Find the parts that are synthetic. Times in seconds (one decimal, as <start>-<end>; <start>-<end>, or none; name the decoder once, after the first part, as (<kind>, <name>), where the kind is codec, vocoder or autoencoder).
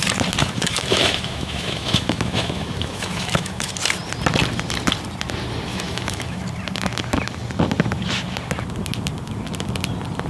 0.4-3.7 (autoencoder, DAC-VAE); 5.7-6.4